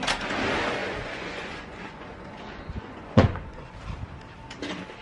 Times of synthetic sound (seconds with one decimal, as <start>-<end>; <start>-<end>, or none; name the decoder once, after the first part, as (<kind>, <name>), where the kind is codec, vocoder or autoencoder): 0.8-3.8 (vocoder, Vocos)